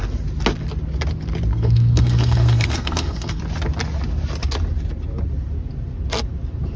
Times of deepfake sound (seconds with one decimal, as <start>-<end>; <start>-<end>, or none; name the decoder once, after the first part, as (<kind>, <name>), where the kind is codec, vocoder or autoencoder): 1.5-3.4 (codec, SNAC)